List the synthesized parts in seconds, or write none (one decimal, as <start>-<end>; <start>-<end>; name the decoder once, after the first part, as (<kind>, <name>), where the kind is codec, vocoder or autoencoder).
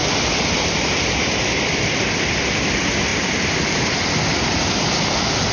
none